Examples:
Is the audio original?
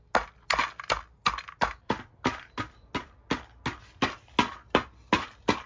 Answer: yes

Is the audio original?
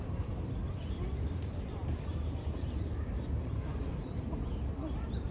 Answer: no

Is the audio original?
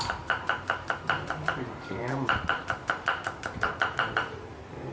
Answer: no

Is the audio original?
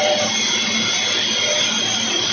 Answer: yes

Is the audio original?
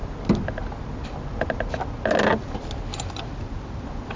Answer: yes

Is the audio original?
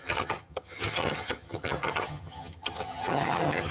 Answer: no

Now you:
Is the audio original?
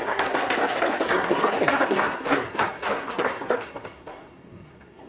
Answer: no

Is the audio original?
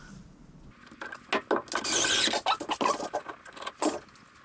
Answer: yes